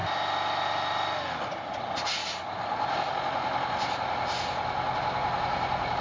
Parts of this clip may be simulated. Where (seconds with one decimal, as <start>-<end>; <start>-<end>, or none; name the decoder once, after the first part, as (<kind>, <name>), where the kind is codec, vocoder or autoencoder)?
none